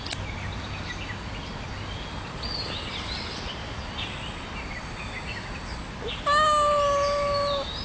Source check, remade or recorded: recorded